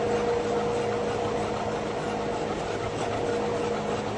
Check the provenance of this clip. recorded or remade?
recorded